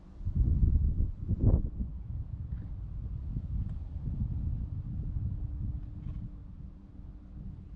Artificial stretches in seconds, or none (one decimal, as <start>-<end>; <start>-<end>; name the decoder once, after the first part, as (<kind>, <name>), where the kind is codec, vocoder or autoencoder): 6.4-7.0 (vocoder, BigVGAN v2)